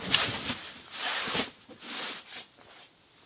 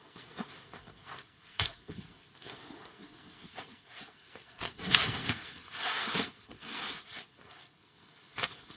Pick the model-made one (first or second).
second